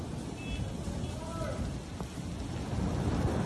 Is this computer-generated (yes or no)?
no